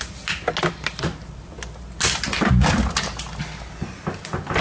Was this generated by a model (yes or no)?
no